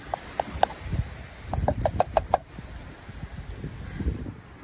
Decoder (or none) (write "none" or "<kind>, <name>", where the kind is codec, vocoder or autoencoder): none